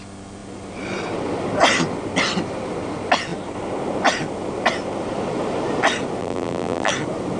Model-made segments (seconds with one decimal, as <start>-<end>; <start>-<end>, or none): 6.2-6.9